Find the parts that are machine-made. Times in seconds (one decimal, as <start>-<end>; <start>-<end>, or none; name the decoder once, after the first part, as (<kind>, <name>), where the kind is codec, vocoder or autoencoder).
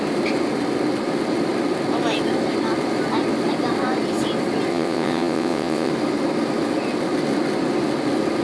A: 4.7-5.9 (vocoder, WaveNeXt)